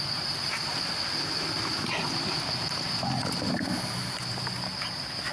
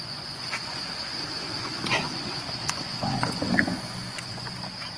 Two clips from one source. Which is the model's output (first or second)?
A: second